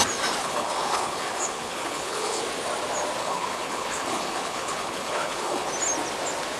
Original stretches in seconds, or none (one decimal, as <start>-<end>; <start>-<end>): 0.0-0.4; 2.4-3.2; 5.7-6.6

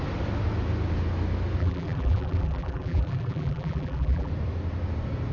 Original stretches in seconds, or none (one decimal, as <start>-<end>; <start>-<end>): 0.0-1.6; 4.3-5.3

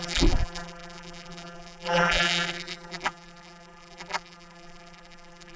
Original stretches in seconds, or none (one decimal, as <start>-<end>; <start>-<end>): none

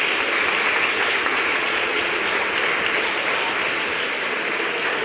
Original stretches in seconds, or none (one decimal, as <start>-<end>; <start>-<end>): 0.0-1.5; 2.2-5.0

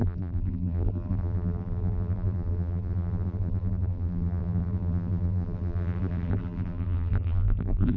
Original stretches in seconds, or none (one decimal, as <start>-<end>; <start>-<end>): none